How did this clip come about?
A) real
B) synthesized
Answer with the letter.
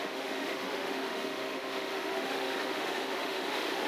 B